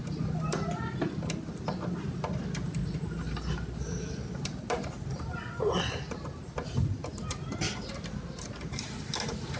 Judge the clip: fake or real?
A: real